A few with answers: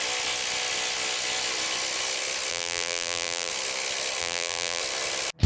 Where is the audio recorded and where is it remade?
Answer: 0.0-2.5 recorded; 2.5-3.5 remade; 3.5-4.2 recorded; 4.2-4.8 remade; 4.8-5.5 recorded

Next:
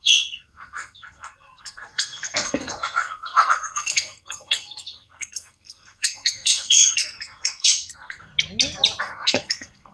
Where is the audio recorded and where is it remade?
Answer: 0.0-8.3 remade; 8.3-9.0 recorded; 9.0-9.9 remade

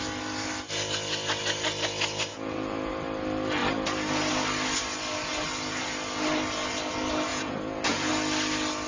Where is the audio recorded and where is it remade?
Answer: 0.0-2.3 recorded; 2.3-2.9 remade; 2.9-7.3 recorded; 7.3-8.1 remade; 8.1-8.9 recorded

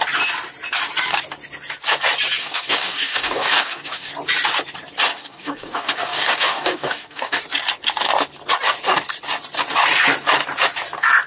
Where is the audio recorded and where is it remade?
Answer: 0.0-2.4 recorded; 2.4-4.1 remade; 4.1-5.1 recorded; 5.1-7.4 remade; 7.4-11.3 recorded